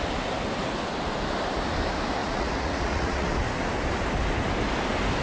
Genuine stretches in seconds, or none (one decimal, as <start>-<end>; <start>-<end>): 0.0-2.2; 3.3-5.2